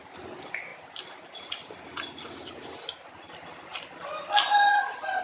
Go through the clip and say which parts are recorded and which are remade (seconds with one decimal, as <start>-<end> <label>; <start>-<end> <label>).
0.0-5.2 recorded